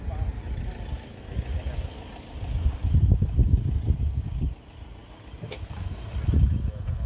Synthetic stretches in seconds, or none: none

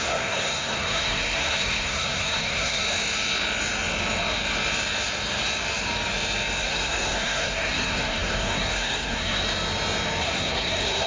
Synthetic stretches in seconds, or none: 0.0-2.8 (codec, SNAC); 6.6-9.4; 10.2-11.1